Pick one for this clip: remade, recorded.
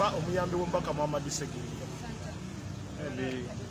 recorded